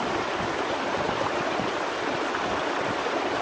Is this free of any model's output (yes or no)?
yes